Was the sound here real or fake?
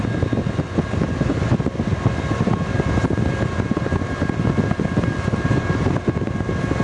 real